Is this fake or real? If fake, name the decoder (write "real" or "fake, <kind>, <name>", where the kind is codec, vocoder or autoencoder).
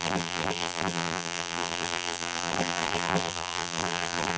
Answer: fake, vocoder, BigVGAN v2